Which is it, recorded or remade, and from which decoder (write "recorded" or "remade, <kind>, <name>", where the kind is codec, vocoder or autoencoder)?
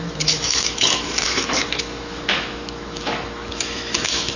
remade, autoencoder, DAC-VAE